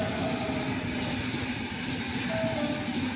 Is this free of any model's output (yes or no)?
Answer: yes